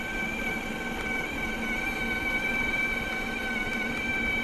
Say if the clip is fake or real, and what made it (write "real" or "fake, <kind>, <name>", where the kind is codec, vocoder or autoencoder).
real